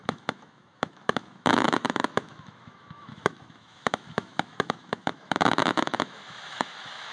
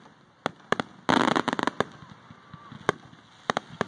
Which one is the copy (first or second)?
first